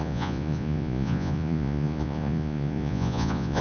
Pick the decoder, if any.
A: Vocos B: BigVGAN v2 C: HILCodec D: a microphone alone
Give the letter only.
A